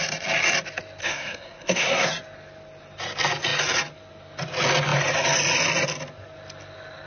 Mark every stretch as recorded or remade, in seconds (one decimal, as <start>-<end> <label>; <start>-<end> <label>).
0.0-1.0 recorded; 1.0-2.1 remade; 2.1-7.1 recorded